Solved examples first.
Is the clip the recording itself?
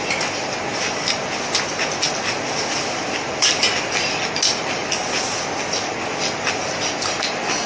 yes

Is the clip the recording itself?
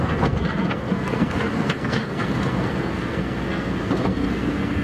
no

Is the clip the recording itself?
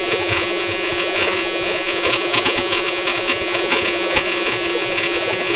no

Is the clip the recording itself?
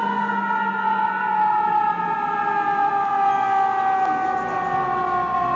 yes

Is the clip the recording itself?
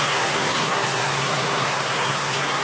no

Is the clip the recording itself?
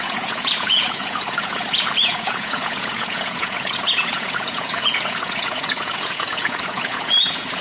no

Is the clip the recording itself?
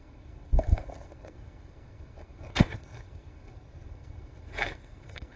no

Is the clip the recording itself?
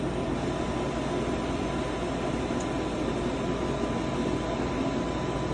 yes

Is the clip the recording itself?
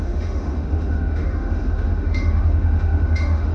no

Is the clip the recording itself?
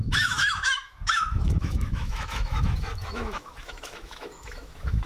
no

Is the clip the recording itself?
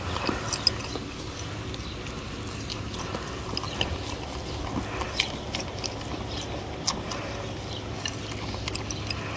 yes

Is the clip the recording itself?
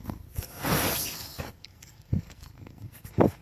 no